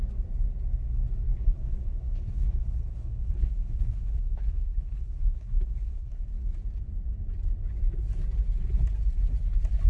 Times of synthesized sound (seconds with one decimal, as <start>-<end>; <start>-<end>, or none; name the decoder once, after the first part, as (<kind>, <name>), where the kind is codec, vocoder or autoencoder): 1.3-6.2 (codec, HILCodec)